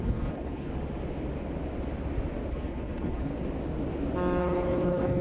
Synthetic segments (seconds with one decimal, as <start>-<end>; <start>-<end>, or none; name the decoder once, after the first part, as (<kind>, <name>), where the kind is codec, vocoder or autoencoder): 0.0-0.7 (codec, HILCodec); 2.5-3.3; 4.4-5.2